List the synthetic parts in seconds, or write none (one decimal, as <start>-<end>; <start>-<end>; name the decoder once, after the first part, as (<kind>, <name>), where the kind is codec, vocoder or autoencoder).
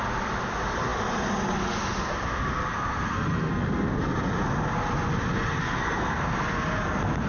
2.7-4.0 (codec, SNAC); 5.6-6.4